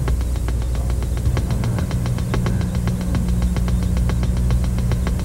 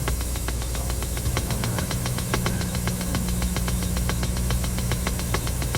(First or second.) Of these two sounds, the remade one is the second